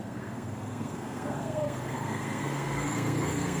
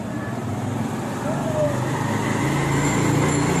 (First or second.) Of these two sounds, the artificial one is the first